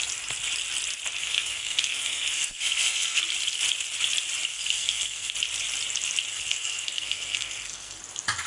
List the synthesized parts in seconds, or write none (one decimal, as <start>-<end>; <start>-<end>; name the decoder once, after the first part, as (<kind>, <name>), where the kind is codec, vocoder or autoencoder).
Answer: 1.2-3.2 (codec, SNAC); 4.5-5.3; 6.3-8.0